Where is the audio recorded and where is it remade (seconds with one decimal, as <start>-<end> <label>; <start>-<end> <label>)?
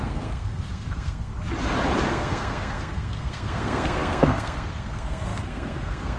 0.0-1.3 remade; 1.3-2.1 recorded; 2.1-6.2 remade